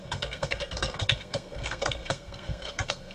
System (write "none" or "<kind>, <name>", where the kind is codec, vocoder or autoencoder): codec, SNAC